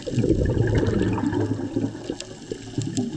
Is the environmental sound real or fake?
real